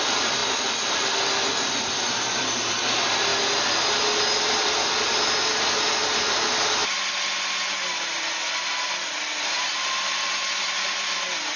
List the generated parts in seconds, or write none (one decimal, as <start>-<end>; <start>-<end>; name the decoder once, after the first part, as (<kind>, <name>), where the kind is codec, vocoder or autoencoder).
0.0-3.3 (vocoder, BigVGAN v2); 4.4-6.8; 8.9-11.6